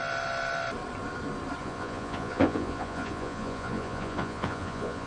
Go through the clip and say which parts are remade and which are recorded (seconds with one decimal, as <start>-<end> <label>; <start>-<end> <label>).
0.0-1.6 recorded; 1.6-5.1 remade